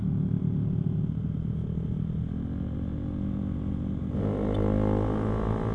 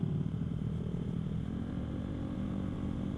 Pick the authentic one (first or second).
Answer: first